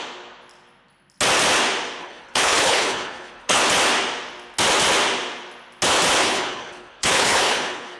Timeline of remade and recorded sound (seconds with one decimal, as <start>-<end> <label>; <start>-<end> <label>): 0.0-2.0 recorded; 2.0-3.6 remade; 3.6-6.2 recorded; 6.2-8.0 remade

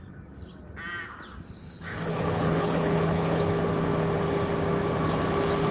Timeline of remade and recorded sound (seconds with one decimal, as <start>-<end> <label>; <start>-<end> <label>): 0.0-1.6 recorded; 1.6-3.4 remade; 3.4-5.7 recorded

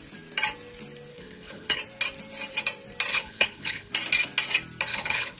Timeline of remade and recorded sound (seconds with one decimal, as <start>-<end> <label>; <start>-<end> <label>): 0.0-1.1 recorded; 1.1-1.8 remade; 1.8-3.1 recorded; 3.1-3.9 remade; 3.9-4.9 recorded; 4.9-5.4 remade

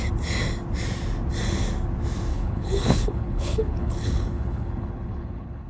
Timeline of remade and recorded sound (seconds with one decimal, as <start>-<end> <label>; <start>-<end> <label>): 0.0-2.3 recorded; 2.3-5.7 remade

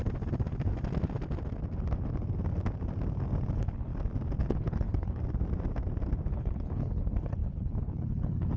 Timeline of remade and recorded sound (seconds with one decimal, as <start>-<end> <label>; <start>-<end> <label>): 0.0-3.5 recorded; 3.5-3.9 remade; 3.9-4.4 recorded; 4.4-5.2 remade; 5.2-6.3 recorded; 6.3-8.6 remade

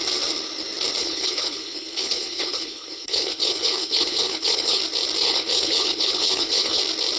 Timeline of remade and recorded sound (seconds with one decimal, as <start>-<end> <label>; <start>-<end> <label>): 0.0-1.0 recorded; 1.0-4.8 remade; 4.8-5.2 recorded; 5.2-6.8 remade; 6.8-7.2 recorded